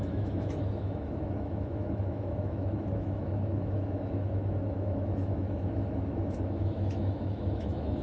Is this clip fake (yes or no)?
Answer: yes